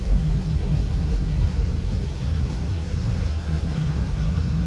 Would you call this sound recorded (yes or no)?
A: no